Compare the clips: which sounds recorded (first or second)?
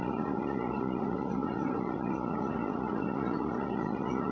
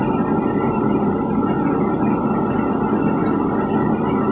second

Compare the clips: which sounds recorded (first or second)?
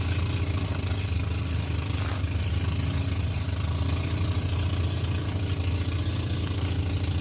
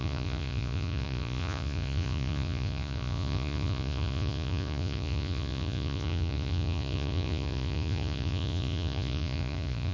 first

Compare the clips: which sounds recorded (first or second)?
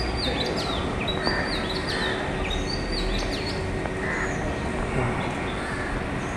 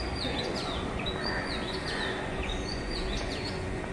first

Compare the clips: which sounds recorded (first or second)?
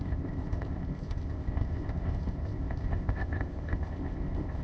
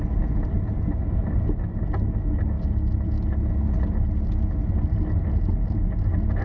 second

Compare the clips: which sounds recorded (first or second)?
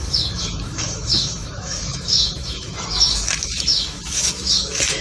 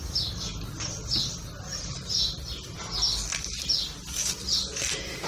second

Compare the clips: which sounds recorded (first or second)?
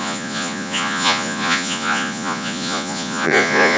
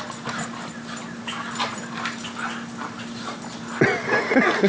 second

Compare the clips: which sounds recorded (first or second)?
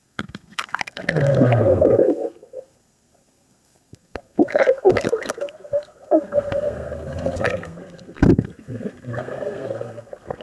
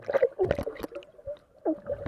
second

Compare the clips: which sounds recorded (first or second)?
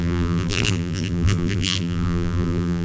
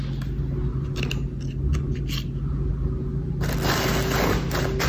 second